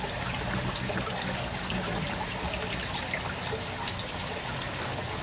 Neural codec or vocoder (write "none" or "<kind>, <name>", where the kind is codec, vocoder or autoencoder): none